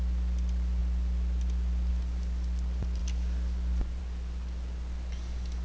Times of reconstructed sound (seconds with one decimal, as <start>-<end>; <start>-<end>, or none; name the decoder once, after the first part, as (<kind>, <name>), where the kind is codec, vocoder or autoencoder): none